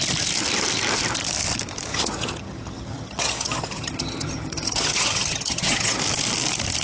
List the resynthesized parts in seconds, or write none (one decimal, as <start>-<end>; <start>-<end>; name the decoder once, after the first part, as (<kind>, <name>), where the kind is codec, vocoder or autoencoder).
1.9-6.0 (vocoder, HiFi-GAN)